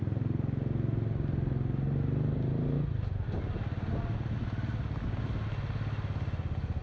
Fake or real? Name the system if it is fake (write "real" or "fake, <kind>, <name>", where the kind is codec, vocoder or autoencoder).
real